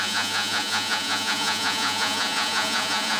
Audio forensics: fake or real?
fake